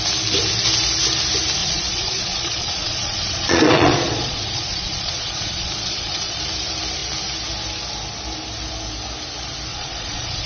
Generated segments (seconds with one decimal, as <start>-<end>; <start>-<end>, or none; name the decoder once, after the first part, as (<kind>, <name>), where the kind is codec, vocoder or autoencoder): 1.6-6.4 (vocoder, Vocos); 9.7-10.5

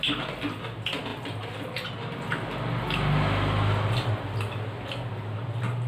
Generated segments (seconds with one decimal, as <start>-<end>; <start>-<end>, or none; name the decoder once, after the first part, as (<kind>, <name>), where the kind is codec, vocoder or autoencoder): none

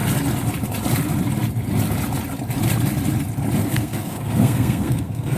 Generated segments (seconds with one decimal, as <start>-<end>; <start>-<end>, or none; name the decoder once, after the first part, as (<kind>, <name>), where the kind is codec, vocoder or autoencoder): 3.6-5.4 (codec, SNAC)

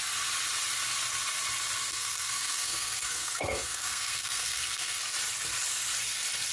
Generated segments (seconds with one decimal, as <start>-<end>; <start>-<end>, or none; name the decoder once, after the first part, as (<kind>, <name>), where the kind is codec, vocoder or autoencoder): 1.9-5.0 (codec, SNAC)

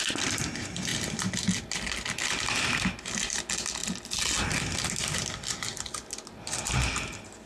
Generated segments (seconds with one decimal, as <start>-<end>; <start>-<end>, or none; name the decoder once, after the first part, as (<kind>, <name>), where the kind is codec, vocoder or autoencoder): none

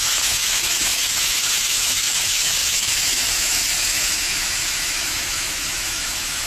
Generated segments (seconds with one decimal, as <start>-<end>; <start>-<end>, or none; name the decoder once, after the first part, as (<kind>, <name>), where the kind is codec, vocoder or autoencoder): 0.0-6.5 (autoencoder, DAC-VAE)

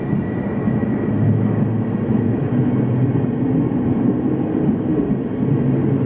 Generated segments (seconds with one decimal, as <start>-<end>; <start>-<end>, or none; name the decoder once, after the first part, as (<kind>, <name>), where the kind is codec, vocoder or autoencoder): none

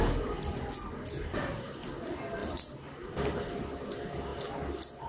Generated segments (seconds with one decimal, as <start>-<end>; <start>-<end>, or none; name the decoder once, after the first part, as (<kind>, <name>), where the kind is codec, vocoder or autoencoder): none